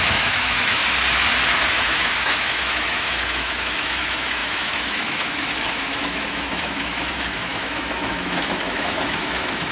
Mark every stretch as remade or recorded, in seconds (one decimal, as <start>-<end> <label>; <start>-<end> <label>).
0.0-0.8 remade; 0.8-1.7 recorded; 1.7-9.7 remade